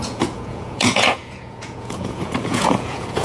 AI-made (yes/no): yes